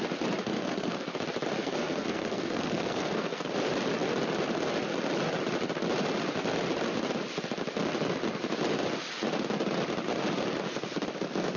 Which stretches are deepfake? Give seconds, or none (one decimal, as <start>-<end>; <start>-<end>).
0.4-1.1; 1.6-3.5

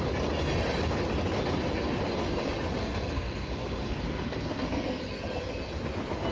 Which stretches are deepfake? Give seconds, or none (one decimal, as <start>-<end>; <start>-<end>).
2.8-5.0

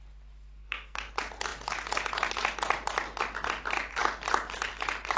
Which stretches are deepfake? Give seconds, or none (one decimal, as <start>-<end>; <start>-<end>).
0.6-1.1